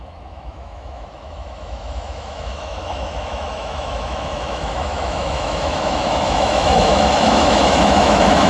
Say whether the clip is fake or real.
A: fake